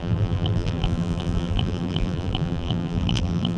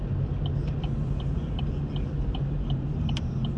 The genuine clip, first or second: second